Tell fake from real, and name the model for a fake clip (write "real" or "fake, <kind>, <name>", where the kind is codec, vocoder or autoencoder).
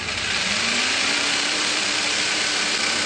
fake, vocoder, BigVGAN v2